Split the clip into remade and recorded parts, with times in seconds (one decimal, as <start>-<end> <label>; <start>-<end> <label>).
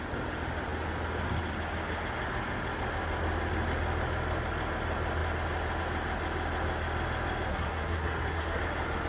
0.0-7.5 recorded; 7.5-8.6 remade; 8.6-9.1 recorded